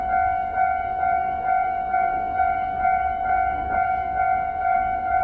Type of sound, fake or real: fake